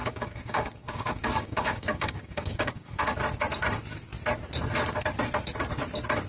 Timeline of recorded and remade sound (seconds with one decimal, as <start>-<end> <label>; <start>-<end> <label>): 0.0-3.0 remade; 3.0-6.3 recorded